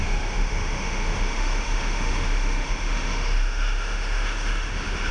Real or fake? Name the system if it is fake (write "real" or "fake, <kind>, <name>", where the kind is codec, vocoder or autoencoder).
fake, autoencoder, DAC-VAE